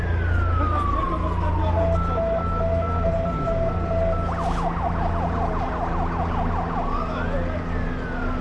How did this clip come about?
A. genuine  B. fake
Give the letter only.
A